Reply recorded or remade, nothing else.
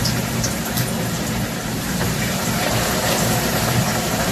remade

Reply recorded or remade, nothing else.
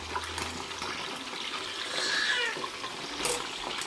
recorded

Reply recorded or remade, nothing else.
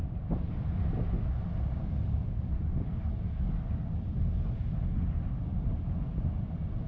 recorded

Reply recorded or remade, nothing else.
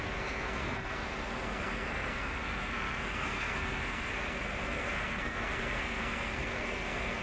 remade